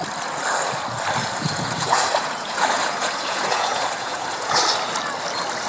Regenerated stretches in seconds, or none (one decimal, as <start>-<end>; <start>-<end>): 1.2-4.6